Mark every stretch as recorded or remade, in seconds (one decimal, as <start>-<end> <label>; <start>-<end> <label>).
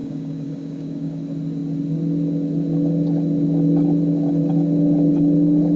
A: 0.0-1.2 remade; 1.2-5.8 recorded